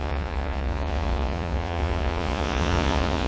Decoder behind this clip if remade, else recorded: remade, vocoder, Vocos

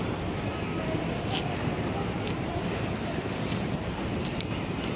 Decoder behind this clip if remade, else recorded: recorded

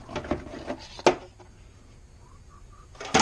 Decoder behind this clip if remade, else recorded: recorded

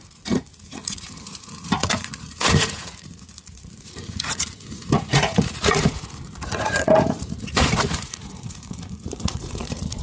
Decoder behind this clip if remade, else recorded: remade, vocoder, Vocos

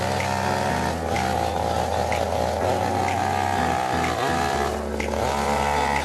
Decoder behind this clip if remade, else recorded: recorded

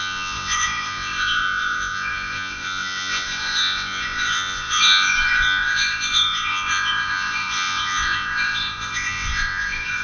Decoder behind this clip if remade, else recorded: remade, vocoder, Vocos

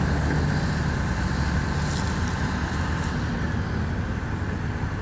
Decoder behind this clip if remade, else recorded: recorded